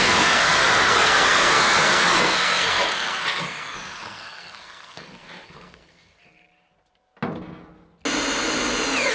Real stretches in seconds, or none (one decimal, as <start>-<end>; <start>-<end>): 6.2-9.1